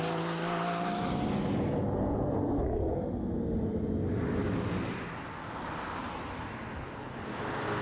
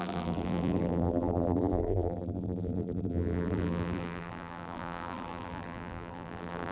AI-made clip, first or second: second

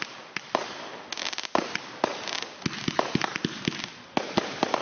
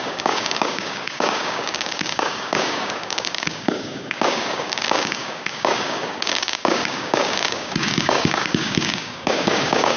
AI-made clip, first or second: second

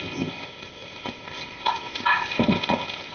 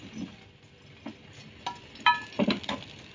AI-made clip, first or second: first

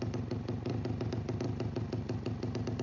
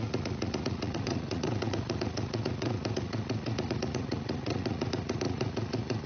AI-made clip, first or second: second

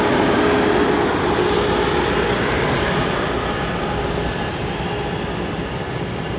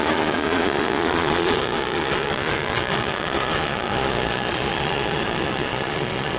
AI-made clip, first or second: second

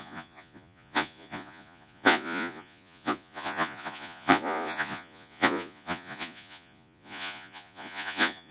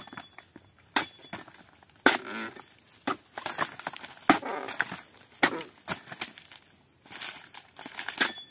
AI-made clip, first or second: first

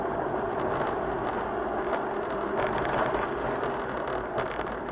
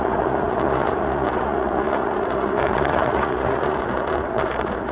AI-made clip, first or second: second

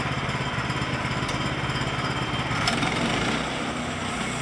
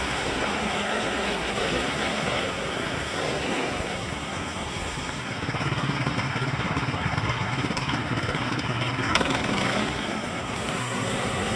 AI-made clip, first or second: second